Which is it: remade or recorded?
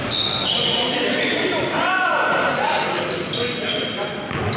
recorded